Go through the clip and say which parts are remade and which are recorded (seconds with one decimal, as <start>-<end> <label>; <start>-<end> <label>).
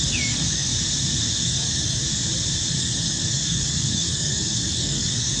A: 0.0-0.7 remade; 0.7-1.3 recorded; 1.3-2.0 remade; 2.0-2.8 recorded; 2.8-5.4 remade